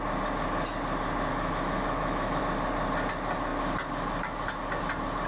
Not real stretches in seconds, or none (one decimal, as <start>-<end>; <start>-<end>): 1.3-2.4